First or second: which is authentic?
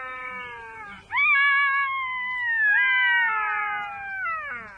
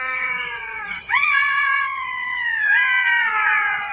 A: first